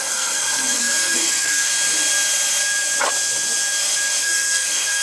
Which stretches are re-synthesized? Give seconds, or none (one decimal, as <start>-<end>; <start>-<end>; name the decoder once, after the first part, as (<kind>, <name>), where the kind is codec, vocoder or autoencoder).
0.0-1.7 (codec, SNAC); 4.2-5.0